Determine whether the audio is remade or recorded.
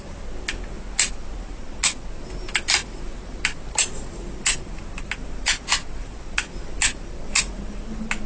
recorded